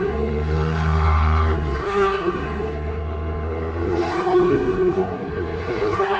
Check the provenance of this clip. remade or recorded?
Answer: remade